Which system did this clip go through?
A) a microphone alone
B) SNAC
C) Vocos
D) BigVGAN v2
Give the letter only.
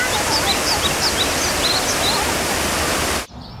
A